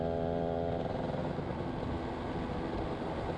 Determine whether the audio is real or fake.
real